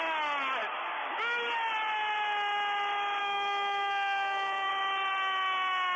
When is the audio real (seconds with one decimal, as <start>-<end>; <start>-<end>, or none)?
0.0-3.2; 4.7-6.0